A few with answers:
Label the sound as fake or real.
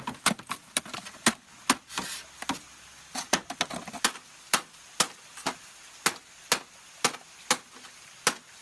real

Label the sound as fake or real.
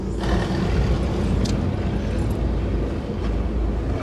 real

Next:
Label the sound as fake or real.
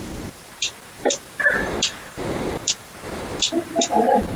fake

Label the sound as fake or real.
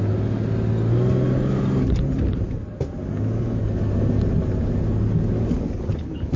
real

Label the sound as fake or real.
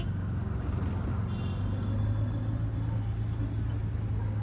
real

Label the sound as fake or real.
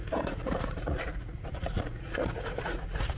fake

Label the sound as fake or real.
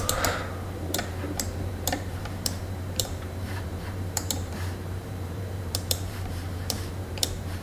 fake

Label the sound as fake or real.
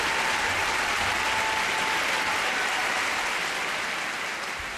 real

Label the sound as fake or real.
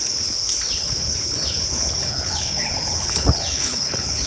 fake